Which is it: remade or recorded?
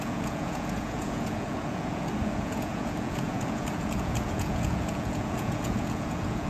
remade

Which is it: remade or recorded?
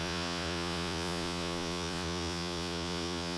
remade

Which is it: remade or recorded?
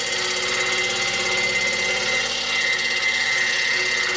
recorded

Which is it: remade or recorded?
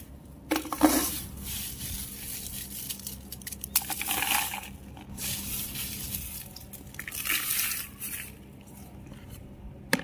recorded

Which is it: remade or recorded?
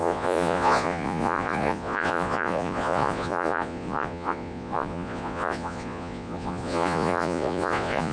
remade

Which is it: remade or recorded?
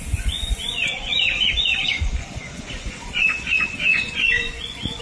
remade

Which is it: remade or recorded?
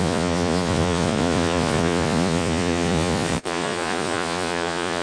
remade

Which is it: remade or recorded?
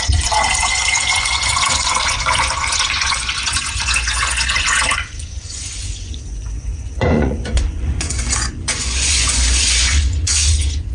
remade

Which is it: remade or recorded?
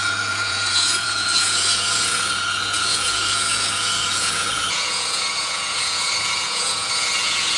remade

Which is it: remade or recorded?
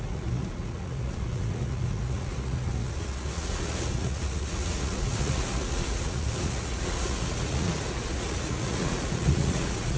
remade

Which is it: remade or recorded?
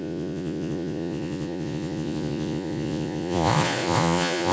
remade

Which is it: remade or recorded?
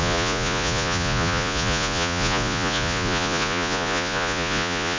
remade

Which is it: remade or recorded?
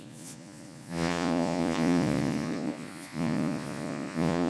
remade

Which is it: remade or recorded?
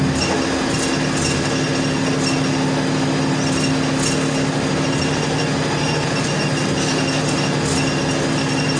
recorded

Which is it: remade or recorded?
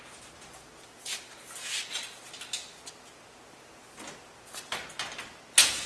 recorded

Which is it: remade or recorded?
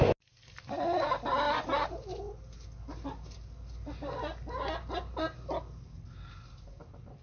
recorded